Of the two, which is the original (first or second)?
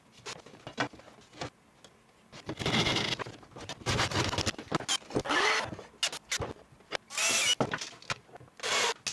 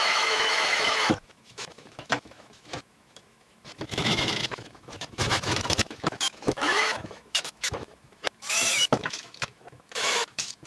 first